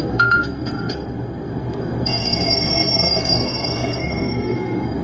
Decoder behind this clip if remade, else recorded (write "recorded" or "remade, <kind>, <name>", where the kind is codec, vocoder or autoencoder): remade, codec, SNAC